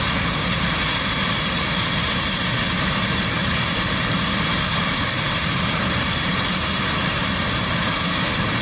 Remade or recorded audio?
remade